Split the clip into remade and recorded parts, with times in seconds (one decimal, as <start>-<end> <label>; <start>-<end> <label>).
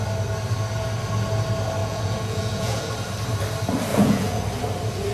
0.0-1.8 recorded; 1.8-2.9 remade; 2.9-3.9 recorded; 3.9-4.4 remade; 4.4-5.1 recorded